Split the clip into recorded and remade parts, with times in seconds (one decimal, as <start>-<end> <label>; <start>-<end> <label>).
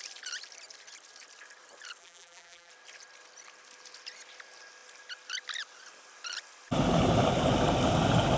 0.0-2.0 recorded; 2.0-2.7 remade; 2.7-8.4 recorded